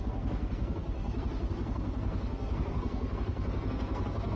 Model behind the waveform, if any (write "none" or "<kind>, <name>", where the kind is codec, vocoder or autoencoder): codec, SNAC